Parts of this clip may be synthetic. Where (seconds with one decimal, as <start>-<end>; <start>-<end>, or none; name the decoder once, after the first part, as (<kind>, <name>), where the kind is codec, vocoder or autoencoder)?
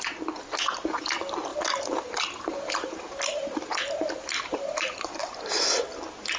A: 1.5-5.3 (vocoder, BigVGAN v2)